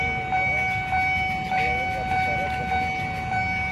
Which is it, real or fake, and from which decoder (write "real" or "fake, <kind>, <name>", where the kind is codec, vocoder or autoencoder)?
real